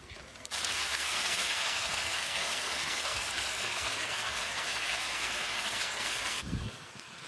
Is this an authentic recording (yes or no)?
no